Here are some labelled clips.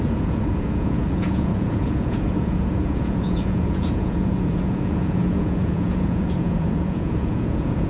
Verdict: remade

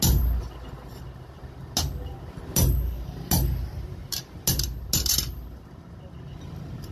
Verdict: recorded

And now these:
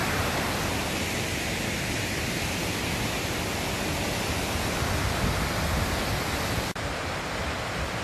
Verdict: recorded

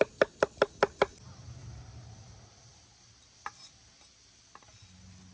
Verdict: recorded